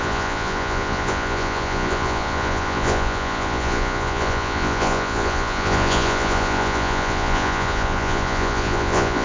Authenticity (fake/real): fake